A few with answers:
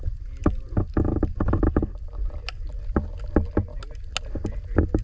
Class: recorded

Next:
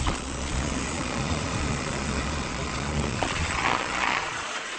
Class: remade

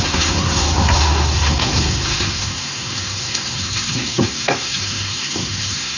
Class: remade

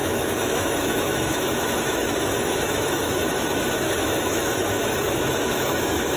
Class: remade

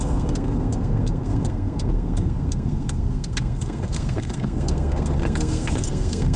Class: remade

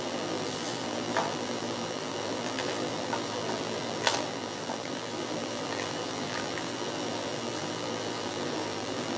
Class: remade